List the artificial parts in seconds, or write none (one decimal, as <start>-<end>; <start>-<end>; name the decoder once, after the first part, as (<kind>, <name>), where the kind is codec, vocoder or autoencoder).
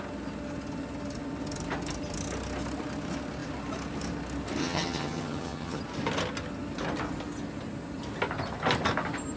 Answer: 4.6-5.8 (vocoder, HiFi-GAN)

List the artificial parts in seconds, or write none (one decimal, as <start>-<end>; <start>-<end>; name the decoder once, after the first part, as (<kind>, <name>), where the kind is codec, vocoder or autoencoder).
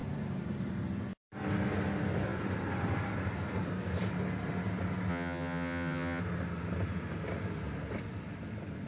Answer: 5.1-6.2 (vocoder, HiFi-GAN)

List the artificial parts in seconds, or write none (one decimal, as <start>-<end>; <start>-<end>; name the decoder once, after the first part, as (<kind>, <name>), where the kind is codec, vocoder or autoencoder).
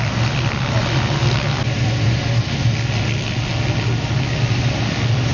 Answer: none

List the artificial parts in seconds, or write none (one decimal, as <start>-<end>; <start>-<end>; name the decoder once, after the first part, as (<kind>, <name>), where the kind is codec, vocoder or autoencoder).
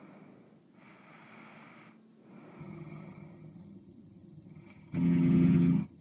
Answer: 2.6-6.0 (vocoder, HiFi-GAN)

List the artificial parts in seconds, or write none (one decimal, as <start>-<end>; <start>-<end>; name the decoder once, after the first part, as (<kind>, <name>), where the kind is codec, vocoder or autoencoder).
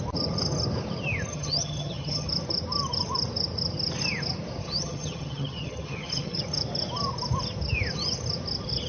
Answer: 1.3-2.3 (vocoder, HiFi-GAN); 4.6-6.4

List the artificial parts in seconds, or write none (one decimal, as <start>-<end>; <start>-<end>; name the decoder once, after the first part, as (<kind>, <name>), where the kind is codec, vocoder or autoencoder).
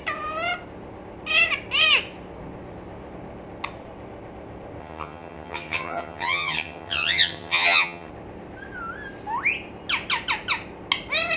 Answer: 4.8-8.1 (vocoder, HiFi-GAN)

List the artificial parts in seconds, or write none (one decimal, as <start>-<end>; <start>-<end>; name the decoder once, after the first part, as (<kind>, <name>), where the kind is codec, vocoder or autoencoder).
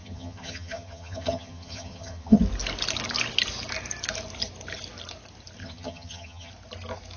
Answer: 0.0-2.4 (vocoder, HiFi-GAN); 5.6-6.5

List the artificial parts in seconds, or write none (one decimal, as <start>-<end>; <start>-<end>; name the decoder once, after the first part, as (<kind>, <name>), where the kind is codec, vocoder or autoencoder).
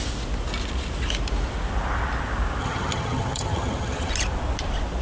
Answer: 2.6-4.1 (vocoder, HiFi-GAN)